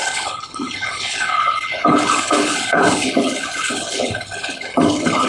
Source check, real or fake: fake